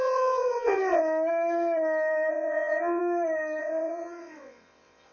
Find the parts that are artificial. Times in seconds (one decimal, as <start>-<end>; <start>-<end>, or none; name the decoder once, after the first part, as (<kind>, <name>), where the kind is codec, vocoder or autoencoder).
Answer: 0.0-1.0 (vocoder, WaveNeXt); 2.3-3.0; 3.6-5.1